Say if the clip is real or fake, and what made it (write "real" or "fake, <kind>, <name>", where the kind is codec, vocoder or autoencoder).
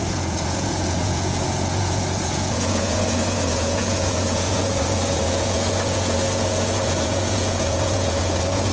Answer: fake, vocoder, Vocos